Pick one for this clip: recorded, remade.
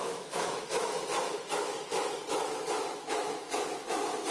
remade